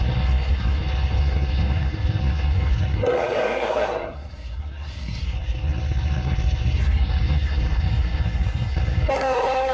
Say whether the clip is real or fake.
fake